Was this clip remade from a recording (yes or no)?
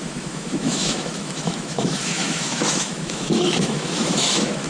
yes